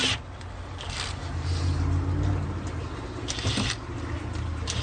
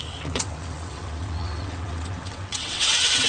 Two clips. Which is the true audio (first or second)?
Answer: first